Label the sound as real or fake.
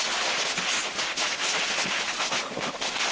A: real